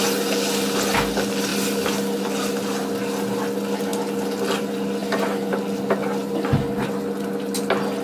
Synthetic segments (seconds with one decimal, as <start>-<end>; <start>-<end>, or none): none